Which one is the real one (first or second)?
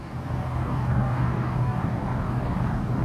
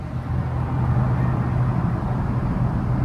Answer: second